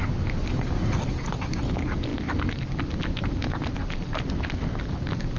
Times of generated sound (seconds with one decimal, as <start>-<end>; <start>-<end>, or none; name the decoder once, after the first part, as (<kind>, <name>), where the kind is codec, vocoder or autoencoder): 2.1-2.9 (vocoder, BigVGAN v2); 3.8-4.6